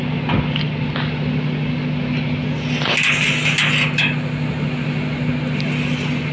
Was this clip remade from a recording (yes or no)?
no